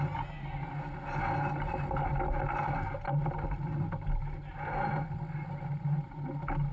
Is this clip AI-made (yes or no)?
no